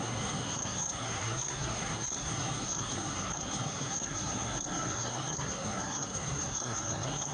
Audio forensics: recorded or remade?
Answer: remade